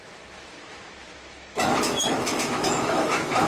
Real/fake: fake